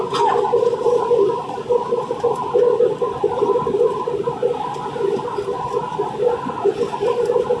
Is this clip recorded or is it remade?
recorded